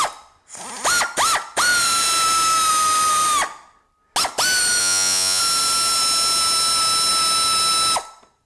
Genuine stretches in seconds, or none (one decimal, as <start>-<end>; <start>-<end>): 0.0-4.8; 5.4-8.5